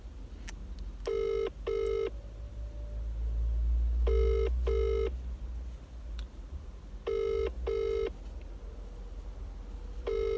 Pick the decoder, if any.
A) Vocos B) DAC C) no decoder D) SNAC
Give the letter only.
C